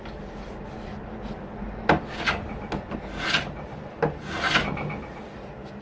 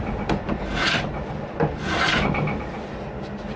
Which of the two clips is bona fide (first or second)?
first